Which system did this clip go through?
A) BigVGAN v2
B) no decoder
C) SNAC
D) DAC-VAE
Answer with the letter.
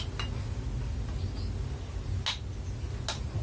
B